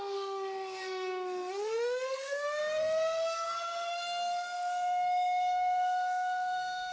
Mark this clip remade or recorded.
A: remade